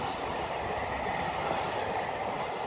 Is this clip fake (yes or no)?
no